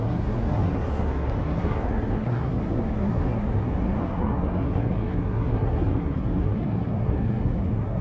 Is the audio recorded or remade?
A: remade